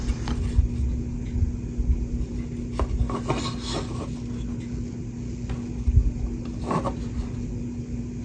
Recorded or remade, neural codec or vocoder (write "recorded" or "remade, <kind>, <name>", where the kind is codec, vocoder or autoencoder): recorded